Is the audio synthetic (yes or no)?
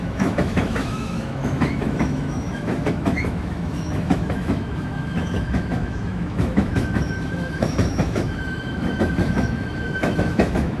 yes